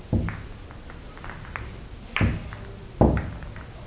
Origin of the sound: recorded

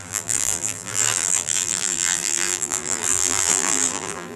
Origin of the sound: remade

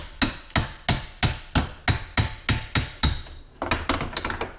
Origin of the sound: recorded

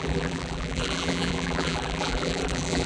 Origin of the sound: remade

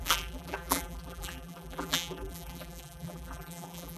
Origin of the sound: remade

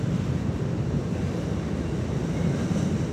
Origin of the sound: recorded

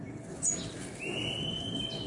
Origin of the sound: recorded